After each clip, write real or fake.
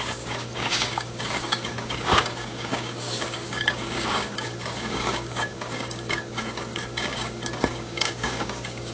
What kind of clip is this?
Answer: fake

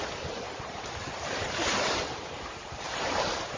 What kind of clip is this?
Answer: fake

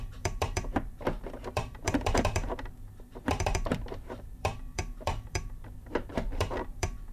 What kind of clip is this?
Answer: fake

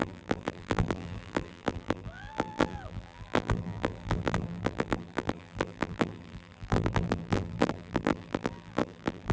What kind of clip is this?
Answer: fake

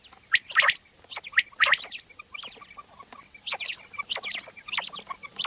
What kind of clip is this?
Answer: real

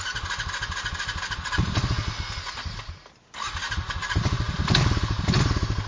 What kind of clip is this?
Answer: real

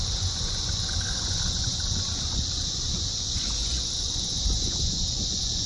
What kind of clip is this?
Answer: fake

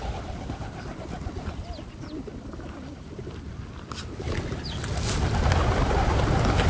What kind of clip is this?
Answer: real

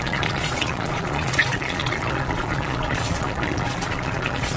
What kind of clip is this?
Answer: fake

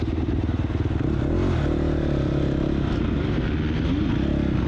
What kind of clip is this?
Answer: real